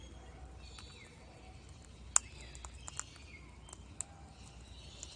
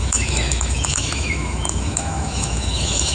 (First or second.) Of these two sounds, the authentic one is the first